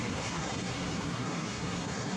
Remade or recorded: remade